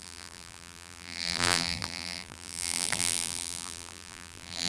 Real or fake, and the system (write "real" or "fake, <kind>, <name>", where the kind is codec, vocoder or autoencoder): fake, vocoder, BigVGAN v2